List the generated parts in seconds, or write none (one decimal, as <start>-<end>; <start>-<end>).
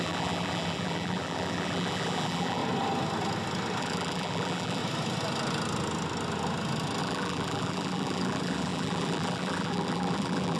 0.0-2.6; 3.8-4.8; 7.0-10.6